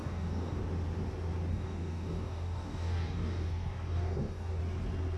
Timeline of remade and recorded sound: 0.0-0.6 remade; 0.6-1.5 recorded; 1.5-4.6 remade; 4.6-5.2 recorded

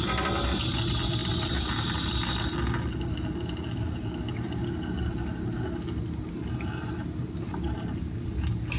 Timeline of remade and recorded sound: 0.0-8.8 recorded

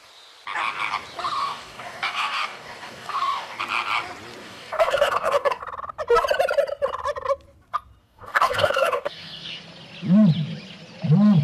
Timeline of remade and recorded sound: 0.0-1.4 recorded; 1.4-3.6 remade; 3.6-4.4 recorded; 4.4-5.6 remade; 5.6-8.0 recorded; 8.0-9.6 remade; 9.6-11.4 recorded

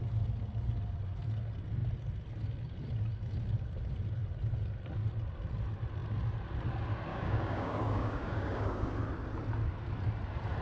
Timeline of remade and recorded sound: 0.0-7.1 recorded; 7.1-8.9 remade; 8.9-10.6 recorded

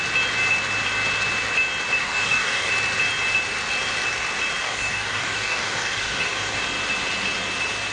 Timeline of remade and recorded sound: 0.0-2.0 recorded; 2.0-2.7 remade; 2.7-4.6 recorded; 4.6-6.6 remade; 6.6-7.9 recorded

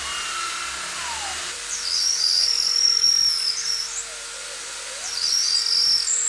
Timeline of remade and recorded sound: 0.0-2.1 recorded; 2.1-3.1 remade; 3.1-6.3 recorded